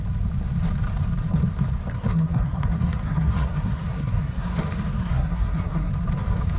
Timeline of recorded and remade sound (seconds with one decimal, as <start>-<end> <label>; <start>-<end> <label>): 0.0-1.9 recorded; 1.9-4.5 remade; 4.5-5.0 recorded; 5.0-5.9 remade; 5.9-6.6 recorded